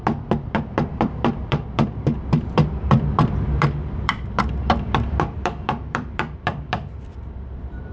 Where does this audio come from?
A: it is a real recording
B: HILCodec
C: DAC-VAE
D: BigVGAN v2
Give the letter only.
D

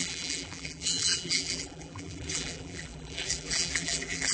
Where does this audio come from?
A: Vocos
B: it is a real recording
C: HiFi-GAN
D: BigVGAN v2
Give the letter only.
D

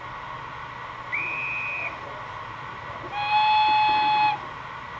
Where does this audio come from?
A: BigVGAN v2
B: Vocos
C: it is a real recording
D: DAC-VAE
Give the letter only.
C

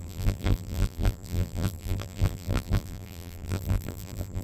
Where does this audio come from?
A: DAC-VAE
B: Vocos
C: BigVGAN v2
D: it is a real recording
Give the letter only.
C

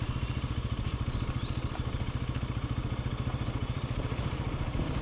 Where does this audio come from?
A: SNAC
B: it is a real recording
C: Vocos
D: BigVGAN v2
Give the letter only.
D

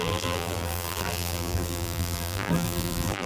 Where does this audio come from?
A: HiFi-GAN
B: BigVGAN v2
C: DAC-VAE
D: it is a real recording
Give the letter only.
B